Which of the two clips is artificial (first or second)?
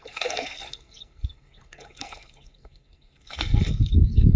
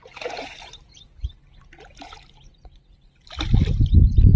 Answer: first